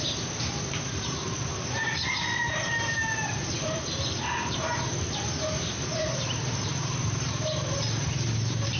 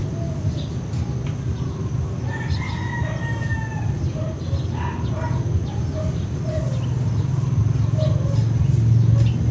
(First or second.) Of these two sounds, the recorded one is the second